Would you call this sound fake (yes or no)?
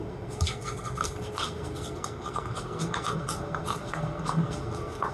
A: yes